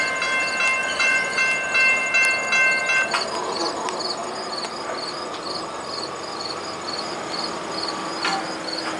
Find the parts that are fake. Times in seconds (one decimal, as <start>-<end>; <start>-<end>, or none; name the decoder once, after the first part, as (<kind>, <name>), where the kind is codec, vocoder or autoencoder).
0.8-1.4 (vocoder, Vocos)